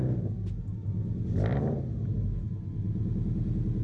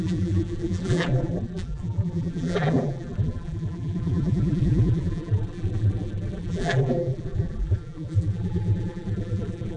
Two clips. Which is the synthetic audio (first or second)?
second